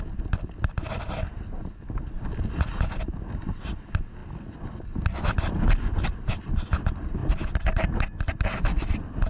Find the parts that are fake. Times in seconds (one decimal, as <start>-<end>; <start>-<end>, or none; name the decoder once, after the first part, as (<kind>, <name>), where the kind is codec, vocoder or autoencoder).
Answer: none